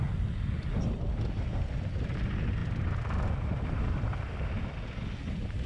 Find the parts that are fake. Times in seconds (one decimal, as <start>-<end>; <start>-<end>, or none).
none